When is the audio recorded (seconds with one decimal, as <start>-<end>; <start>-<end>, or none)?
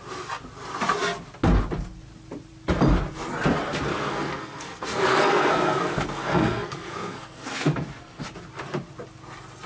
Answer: 0.0-3.9; 8.2-9.7